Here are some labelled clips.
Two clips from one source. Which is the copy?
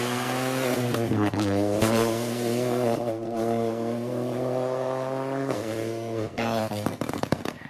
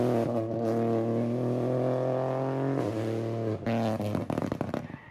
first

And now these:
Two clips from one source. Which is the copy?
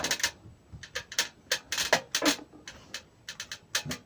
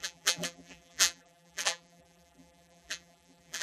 second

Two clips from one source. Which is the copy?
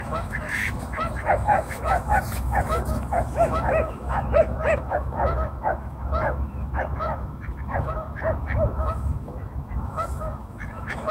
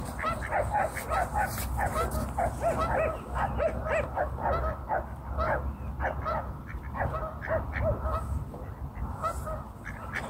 first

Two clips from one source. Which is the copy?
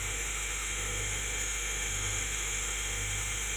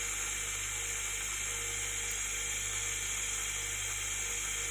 first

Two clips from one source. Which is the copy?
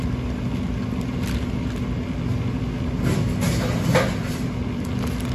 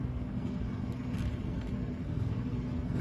second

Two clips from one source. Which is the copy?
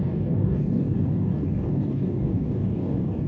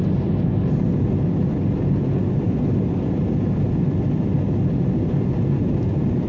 first